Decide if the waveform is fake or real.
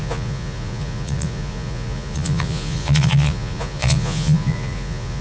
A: fake